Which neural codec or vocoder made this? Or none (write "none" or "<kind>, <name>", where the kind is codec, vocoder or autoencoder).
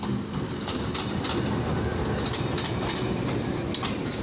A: none